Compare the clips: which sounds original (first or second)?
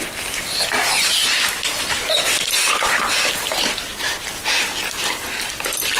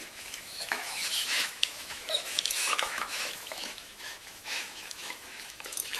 first